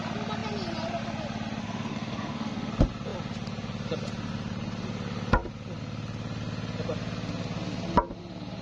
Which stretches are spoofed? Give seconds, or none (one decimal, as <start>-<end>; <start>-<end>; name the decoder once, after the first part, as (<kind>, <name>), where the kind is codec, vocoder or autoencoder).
1.6-2.7 (codec, SNAC)

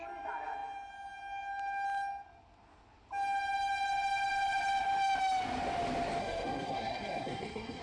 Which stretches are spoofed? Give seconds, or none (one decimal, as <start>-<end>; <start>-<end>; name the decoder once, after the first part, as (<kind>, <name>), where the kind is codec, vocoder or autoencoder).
6.2-7.8 (codec, SNAC)